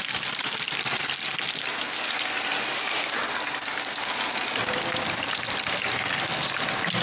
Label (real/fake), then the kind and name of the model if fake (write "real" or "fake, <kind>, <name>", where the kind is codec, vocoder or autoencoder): real